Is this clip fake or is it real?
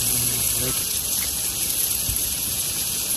fake